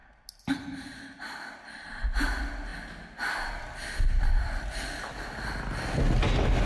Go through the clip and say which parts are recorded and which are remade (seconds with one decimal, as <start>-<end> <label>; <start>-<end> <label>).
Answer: 0.0-6.7 recorded